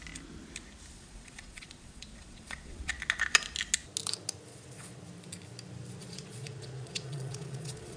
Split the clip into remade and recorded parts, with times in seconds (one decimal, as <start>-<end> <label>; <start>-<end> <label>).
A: 0.0-0.9 recorded; 0.9-2.9 remade; 2.9-4.5 recorded; 4.5-5.0 remade; 5.0-6.0 recorded; 6.0-8.0 remade